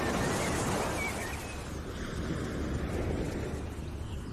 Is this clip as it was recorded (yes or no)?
yes